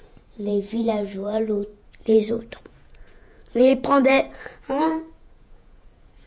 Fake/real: fake